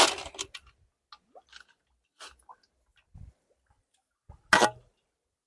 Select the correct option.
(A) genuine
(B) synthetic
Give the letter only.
A